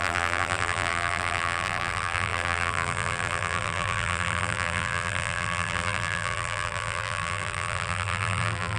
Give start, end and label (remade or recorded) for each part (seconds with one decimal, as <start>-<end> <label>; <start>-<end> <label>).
0.0-8.8 remade